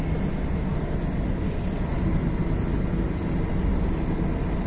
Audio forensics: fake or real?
real